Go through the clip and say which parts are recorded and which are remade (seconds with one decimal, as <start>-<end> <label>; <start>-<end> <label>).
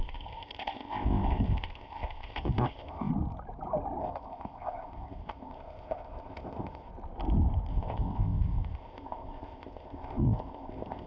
0.0-3.1 remade; 3.1-4.0 recorded; 4.0-6.9 remade; 6.9-7.7 recorded; 7.7-11.1 remade